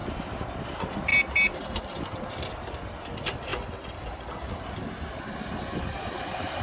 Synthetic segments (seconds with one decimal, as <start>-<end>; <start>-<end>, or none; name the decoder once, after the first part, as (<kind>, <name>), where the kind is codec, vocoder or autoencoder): 0.6-1.1 (vocoder, BigVGAN v2); 2.4-6.6